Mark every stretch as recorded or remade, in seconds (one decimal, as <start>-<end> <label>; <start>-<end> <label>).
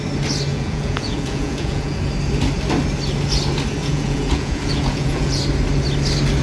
0.0-0.5 recorded; 0.5-2.0 remade; 2.0-3.8 recorded; 3.8-5.4 remade; 5.4-6.4 recorded